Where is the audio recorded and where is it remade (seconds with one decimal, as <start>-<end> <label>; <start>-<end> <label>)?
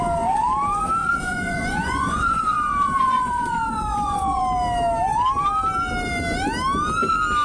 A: 0.0-1.0 recorded; 1.0-4.4 remade; 4.4-7.4 recorded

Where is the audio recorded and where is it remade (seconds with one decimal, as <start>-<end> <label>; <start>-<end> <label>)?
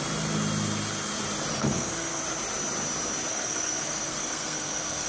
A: 0.0-1.6 recorded; 1.6-2.2 remade; 2.2-3.3 recorded; 3.3-5.1 remade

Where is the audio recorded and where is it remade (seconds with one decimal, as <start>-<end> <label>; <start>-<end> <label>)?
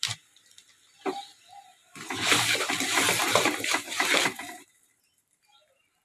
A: 0.0-0.6 remade; 0.6-1.2 recorded; 1.2-6.0 remade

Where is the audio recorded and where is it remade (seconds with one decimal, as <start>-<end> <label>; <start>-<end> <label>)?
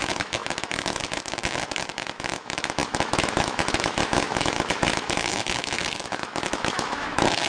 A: 0.0-7.5 remade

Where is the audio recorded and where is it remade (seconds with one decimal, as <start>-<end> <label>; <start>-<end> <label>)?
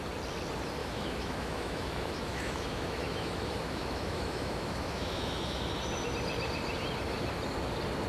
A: 0.0-0.8 recorded; 0.8-5.7 remade; 5.7-8.1 recorded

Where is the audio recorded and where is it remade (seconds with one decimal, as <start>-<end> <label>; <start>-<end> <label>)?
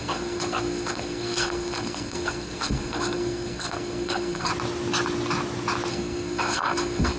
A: 0.0-4.5 remade; 4.5-5.9 recorded; 5.9-7.2 remade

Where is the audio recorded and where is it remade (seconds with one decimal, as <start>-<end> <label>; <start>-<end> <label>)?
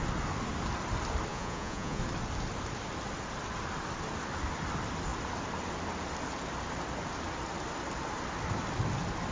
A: 0.0-1.3 recorded; 1.3-2.0 remade; 2.0-9.3 recorded